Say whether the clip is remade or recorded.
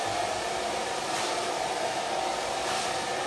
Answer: recorded